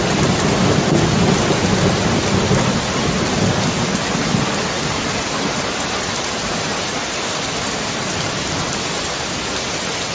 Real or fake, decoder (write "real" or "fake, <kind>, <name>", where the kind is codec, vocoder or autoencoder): real